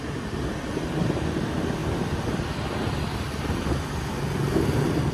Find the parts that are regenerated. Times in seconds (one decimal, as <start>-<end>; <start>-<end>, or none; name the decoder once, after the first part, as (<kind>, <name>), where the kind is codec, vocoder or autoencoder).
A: none